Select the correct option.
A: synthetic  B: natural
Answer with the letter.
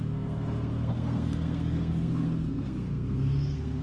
A